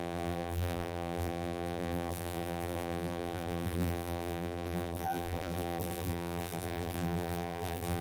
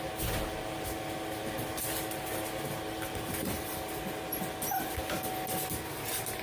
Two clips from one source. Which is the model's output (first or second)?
first